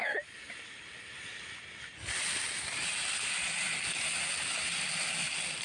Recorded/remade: recorded